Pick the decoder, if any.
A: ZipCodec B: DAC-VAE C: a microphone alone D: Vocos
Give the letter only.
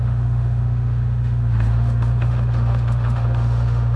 B